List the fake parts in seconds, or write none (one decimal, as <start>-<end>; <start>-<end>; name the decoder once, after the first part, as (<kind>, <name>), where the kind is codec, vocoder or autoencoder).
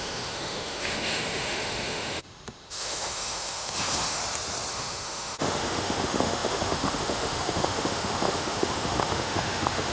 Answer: 0.0-4.2 (autoencoder, DAC-VAE); 4.7-9.9